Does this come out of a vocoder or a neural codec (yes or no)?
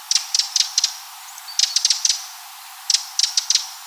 no